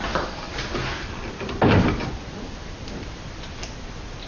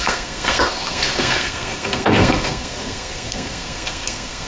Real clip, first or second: first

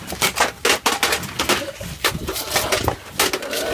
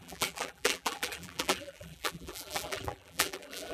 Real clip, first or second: first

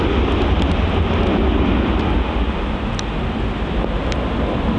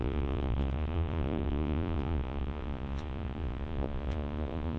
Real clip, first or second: first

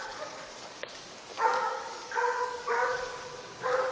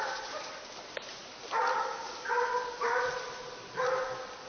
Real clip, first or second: second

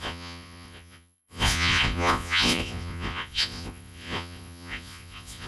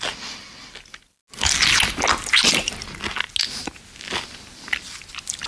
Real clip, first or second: second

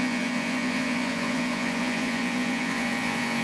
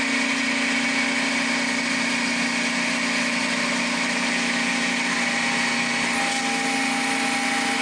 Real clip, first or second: second